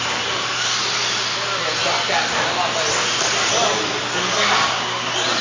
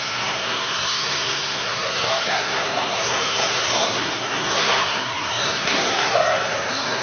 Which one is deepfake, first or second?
second